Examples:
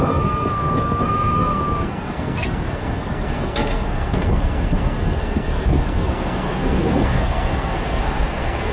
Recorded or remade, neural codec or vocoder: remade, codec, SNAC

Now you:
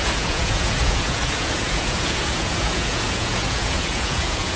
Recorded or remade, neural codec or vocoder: remade, vocoder, Vocos